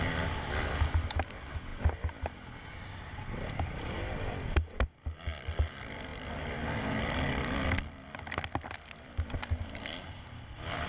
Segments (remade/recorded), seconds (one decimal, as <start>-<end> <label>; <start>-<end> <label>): 0.0-10.9 recorded